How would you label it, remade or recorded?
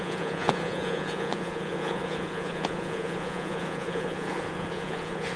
remade